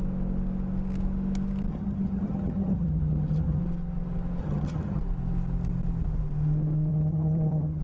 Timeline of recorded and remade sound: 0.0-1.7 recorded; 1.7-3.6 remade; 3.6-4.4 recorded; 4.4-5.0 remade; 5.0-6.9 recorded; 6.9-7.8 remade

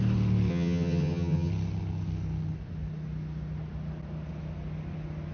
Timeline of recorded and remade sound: 0.0-0.5 recorded; 0.5-1.5 remade; 1.5-5.3 recorded

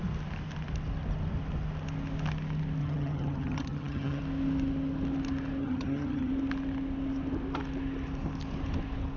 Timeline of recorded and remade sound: 0.0-2.8 recorded; 2.8-4.2 remade; 4.2-5.6 recorded; 5.6-6.3 remade; 6.3-9.2 recorded